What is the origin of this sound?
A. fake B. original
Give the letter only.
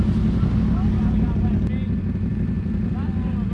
B